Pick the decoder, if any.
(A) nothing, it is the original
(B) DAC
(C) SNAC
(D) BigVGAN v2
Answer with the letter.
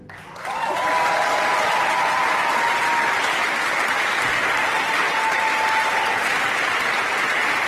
A